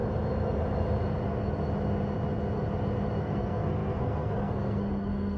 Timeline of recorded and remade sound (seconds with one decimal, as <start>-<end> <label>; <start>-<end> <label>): 0.0-3.2 recorded; 3.2-5.4 remade